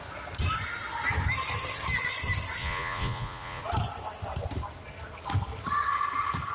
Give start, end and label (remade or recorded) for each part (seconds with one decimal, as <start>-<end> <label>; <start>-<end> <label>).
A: 0.0-2.6 recorded; 2.6-3.6 remade; 3.6-6.5 recorded